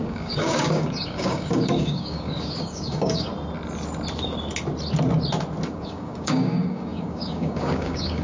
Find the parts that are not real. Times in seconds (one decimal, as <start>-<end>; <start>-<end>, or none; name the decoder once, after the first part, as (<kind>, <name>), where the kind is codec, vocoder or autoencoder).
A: 0.0-3.3 (codec, DAC); 5.7-8.2